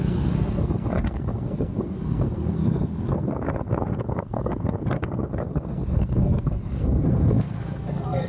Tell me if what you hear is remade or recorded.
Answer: remade